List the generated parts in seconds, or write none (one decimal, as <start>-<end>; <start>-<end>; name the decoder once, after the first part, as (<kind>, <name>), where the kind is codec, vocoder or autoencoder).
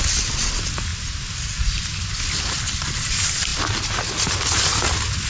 none